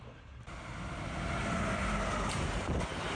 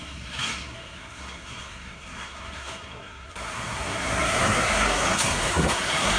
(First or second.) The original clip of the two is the first